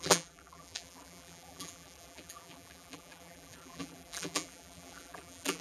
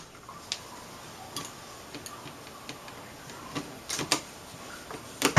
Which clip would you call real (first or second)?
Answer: second